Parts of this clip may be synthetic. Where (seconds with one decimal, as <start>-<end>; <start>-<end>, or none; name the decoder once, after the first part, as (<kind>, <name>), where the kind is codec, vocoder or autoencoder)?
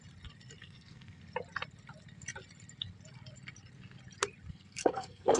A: 0.6-1.2 (codec, SNAC); 4.5-5.4